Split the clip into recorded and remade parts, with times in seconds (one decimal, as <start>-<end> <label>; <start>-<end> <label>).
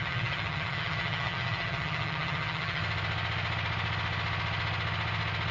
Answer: 0.0-2.8 remade; 2.8-5.5 recorded